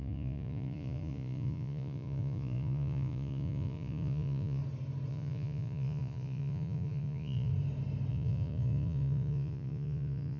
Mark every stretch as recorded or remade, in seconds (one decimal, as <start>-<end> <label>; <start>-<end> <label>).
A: 0.0-4.6 remade; 4.6-5.1 recorded; 5.1-7.5 remade; 7.5-8.1 recorded; 8.1-10.4 remade